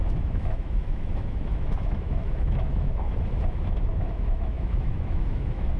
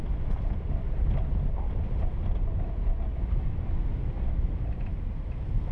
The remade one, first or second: first